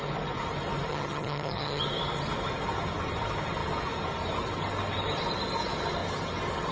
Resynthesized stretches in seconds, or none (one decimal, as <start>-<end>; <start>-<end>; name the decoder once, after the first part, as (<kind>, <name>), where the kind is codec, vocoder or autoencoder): 0.9-1.8 (vocoder, HiFi-GAN)